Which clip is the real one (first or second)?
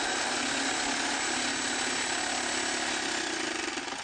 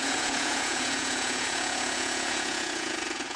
first